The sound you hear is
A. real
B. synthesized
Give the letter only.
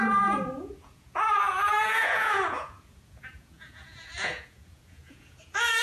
B